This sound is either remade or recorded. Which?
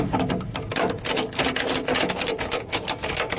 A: recorded